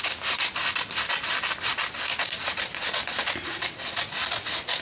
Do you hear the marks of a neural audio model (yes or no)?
no